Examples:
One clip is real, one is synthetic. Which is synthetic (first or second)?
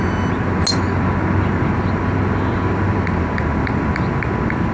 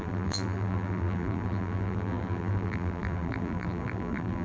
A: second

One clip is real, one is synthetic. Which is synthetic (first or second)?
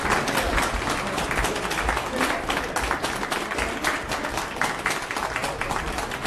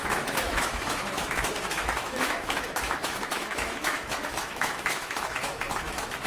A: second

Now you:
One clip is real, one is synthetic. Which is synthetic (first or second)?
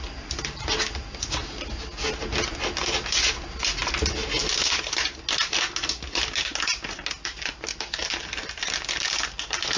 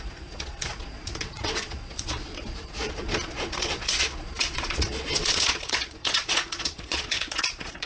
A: second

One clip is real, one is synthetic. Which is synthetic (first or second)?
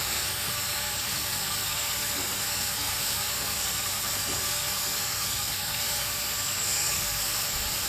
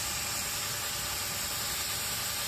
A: first